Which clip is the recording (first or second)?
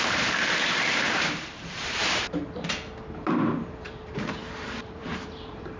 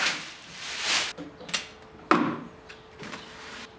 second